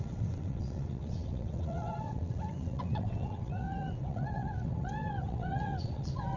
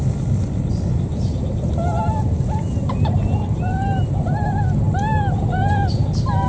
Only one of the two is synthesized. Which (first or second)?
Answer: first